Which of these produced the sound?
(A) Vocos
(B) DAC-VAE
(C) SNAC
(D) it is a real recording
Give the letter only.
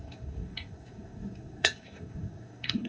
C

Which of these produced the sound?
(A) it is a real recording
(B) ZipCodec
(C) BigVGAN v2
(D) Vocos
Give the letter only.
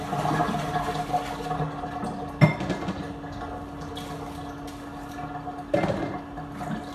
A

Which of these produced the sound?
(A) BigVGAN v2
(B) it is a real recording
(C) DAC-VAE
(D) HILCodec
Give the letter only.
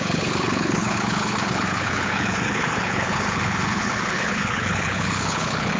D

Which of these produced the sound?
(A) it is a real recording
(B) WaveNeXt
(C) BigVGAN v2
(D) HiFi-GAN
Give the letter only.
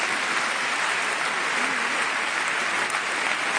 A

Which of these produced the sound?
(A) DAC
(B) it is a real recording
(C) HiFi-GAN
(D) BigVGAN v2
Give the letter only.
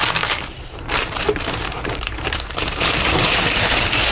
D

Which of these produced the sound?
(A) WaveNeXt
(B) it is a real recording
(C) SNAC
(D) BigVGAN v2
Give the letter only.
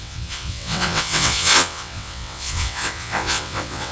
A